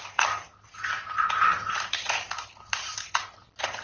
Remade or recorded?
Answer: recorded